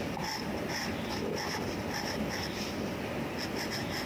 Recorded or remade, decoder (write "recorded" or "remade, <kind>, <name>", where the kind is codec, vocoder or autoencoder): recorded